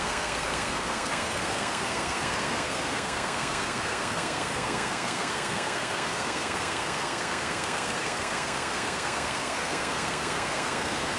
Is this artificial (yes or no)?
yes